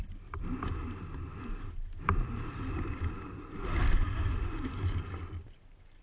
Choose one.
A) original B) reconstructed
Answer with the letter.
B